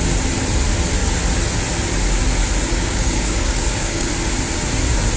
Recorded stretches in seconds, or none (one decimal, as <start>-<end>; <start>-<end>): 0.0-2.7; 4.1-5.2